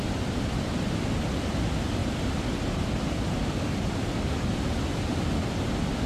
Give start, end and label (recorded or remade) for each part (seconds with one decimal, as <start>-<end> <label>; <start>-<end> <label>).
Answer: 0.0-2.0 recorded; 2.0-3.6 remade; 3.6-6.1 recorded